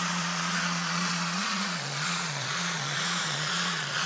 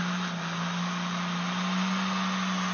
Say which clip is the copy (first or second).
first